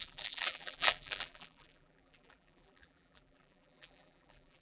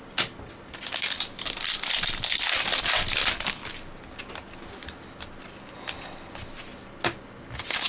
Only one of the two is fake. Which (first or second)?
first